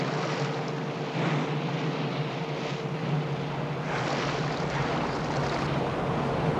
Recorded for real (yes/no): yes